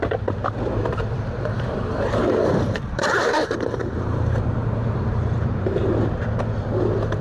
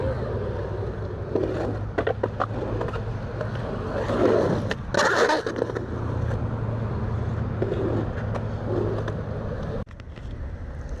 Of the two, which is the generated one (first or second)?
first